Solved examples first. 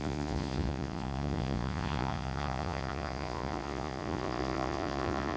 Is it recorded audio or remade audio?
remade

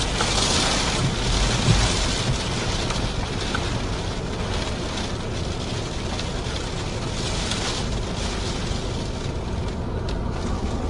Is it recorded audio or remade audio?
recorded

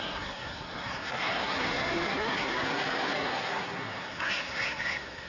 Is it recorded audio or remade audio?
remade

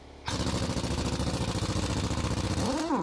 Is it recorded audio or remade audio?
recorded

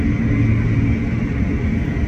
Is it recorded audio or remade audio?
recorded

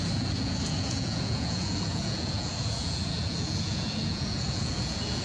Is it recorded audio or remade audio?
remade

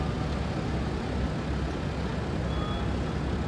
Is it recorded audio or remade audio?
recorded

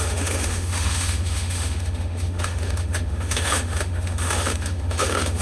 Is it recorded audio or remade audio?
remade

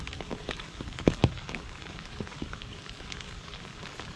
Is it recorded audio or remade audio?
remade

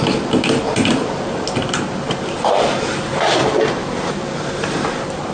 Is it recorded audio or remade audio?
recorded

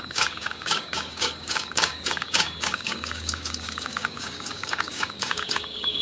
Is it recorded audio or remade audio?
remade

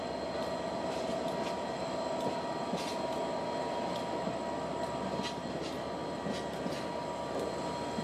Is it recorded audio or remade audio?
recorded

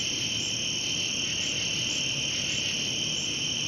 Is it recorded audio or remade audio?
recorded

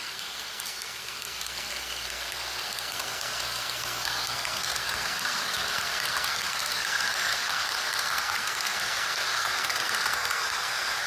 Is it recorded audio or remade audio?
remade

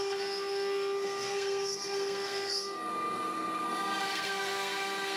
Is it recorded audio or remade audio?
remade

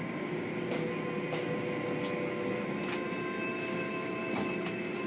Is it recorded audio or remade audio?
recorded